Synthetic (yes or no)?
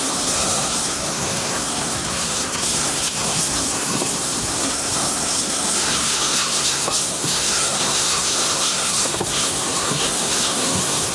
yes